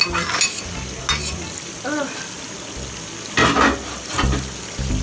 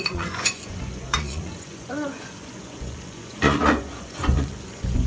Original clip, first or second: first